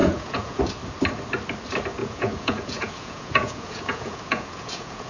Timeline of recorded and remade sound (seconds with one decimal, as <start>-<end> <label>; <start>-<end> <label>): 0.0-0.6 remade; 0.6-2.0 recorded; 2.0-5.1 remade